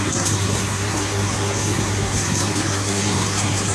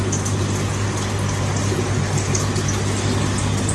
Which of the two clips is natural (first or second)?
second